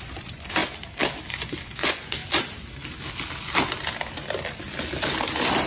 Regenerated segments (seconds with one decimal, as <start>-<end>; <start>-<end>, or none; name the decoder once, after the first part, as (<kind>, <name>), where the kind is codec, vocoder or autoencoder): 0.0-0.6 (vocoder, Vocos); 1.3-2.2

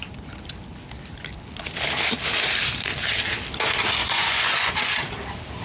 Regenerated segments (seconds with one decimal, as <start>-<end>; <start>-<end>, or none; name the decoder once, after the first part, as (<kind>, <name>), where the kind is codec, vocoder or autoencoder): 4.0-4.8 (vocoder, Vocos)